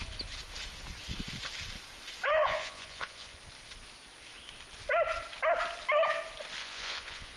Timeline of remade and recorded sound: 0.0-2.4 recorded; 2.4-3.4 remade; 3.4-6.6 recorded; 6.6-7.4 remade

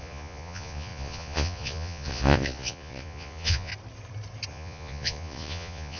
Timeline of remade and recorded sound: 0.0-3.7 remade; 3.7-4.5 recorded; 4.5-6.0 remade

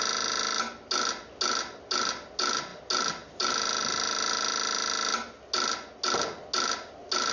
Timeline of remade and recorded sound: 0.0-7.3 recorded

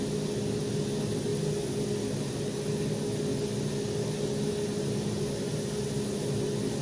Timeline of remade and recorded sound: 0.0-6.8 recorded

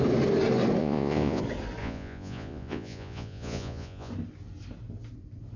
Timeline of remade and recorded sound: 0.0-0.8 recorded; 0.8-1.4 remade; 1.4-1.8 recorded; 1.8-4.1 remade; 4.1-5.6 recorded

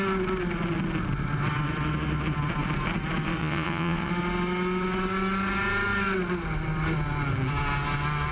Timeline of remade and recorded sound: 0.0-3.4 recorded; 3.4-4.1 remade; 4.1-8.3 recorded

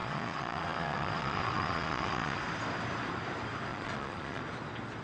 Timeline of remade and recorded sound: 0.0-2.4 remade; 2.4-3.7 recorded; 3.7-4.4 remade; 4.4-5.0 recorded